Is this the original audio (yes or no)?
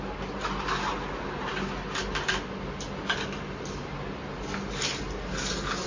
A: yes